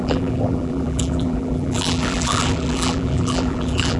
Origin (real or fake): fake